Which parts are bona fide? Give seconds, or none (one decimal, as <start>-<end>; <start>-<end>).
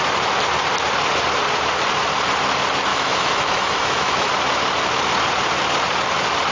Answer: 0.0-2.9; 4.3-6.5